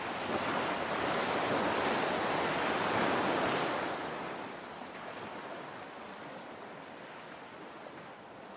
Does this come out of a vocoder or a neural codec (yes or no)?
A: no